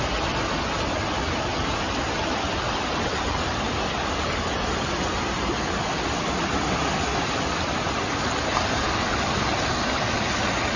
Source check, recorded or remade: recorded